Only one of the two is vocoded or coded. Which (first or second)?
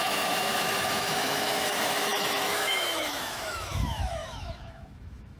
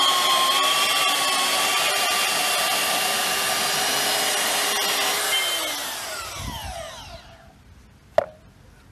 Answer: first